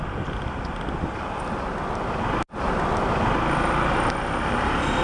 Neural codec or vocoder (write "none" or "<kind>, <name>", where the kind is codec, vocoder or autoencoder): none